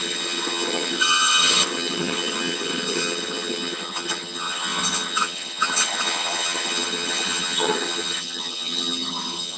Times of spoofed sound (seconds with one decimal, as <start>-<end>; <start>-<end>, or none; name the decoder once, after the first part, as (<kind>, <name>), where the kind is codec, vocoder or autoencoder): 0.0-9.6 (vocoder, HiFi-GAN)